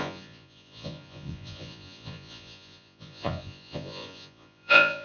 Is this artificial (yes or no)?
yes